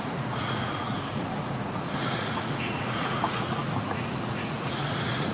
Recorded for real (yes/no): no